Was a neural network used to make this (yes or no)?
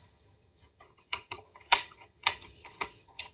yes